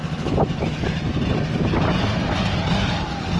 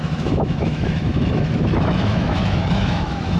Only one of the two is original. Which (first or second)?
first